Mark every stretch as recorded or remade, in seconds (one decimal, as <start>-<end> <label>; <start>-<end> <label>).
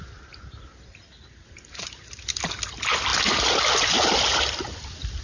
0.0-5.2 recorded